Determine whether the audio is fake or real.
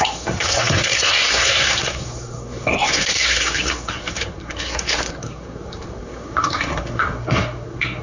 fake